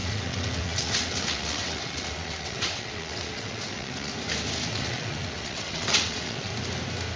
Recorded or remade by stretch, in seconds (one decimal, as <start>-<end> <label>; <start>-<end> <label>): 0.0-4.1 remade; 4.1-4.7 recorded; 4.7-6.5 remade; 6.5-7.2 recorded